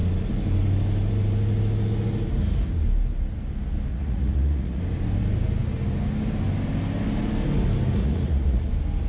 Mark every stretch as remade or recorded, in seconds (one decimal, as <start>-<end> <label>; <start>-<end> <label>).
0.0-3.9 recorded; 3.9-4.8 remade; 4.8-8.0 recorded; 8.0-8.7 remade; 8.7-9.1 recorded